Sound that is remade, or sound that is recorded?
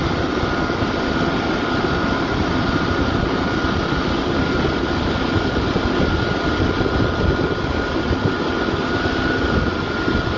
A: recorded